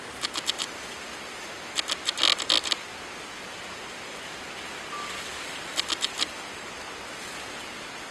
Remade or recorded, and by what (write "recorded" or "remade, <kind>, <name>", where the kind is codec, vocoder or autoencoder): recorded